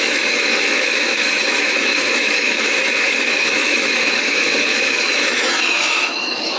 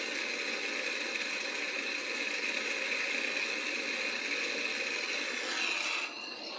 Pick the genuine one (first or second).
second